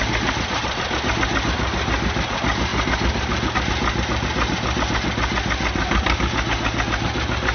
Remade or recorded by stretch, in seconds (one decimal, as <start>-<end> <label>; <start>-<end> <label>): 0.0-7.5 recorded